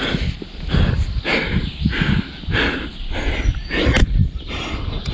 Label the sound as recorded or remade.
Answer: recorded